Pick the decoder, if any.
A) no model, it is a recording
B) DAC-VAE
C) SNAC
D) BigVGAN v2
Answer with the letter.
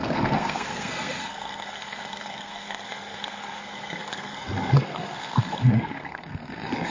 C